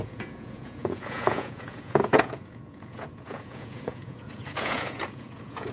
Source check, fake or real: fake